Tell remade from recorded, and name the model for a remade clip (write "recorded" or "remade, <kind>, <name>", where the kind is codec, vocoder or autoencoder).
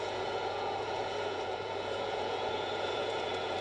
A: remade, vocoder, Vocos